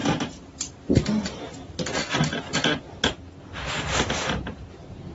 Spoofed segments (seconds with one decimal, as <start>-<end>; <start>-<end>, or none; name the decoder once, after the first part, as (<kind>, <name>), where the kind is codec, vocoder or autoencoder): none